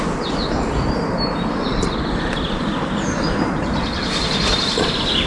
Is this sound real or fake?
real